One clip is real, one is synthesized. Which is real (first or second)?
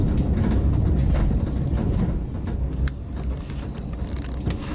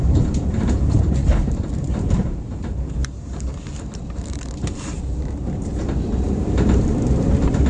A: first